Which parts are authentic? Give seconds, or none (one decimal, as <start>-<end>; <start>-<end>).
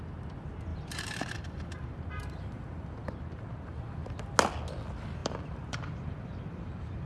0.0-0.7; 4.2-5.2